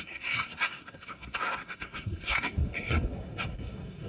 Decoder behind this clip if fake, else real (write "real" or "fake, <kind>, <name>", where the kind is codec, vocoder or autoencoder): fake, codec, SNAC